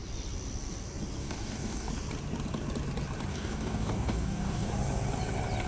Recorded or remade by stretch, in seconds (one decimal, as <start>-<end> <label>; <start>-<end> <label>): 0.0-1.2 recorded; 1.2-1.9 remade; 1.9-3.3 recorded; 3.3-4.7 remade; 4.7-5.7 recorded